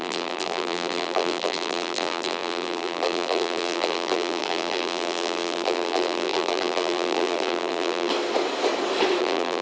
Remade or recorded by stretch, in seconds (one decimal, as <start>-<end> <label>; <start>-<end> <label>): 0.0-8.1 remade; 8.1-9.2 recorded; 9.2-9.6 remade